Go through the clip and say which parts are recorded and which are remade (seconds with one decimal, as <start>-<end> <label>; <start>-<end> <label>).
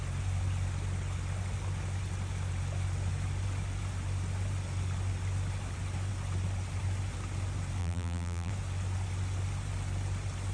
0.0-7.8 recorded; 7.8-8.5 remade; 8.5-10.5 recorded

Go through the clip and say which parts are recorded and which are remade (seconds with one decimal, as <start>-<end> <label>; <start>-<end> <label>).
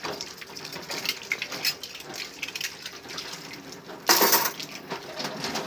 0.0-4.6 recorded; 4.6-5.1 remade; 5.1-5.7 recorded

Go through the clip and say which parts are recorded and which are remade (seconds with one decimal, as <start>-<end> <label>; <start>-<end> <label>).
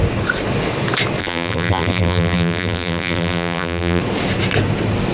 0.0-1.2 recorded; 1.2-4.0 remade; 4.0-5.1 recorded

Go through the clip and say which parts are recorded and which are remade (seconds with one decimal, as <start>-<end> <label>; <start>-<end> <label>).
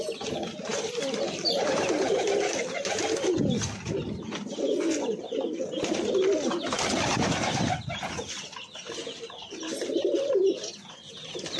0.0-0.7 recorded; 0.7-5.2 remade; 5.2-11.6 recorded